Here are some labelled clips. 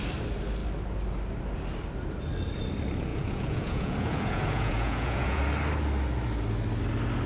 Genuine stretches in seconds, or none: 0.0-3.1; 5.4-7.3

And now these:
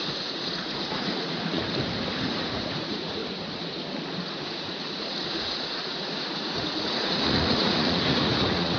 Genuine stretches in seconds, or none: 1.6-2.3; 3.2-4.1

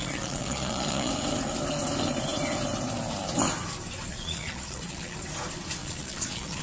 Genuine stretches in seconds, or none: 1.1-4.1; 5.2-5.8

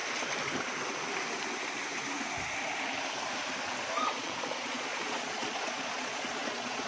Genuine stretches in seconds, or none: 0.0-4.1

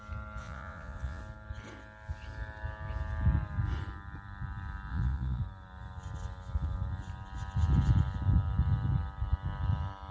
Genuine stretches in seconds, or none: 0.0-0.4; 1.2-4.9; 5.4-10.1

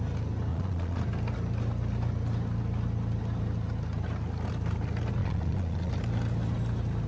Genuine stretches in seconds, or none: 0.0-0.5; 1.0-5.2; 5.9-7.1

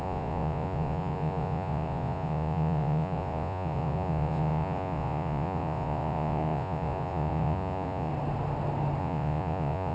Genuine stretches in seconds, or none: 8.1-9.0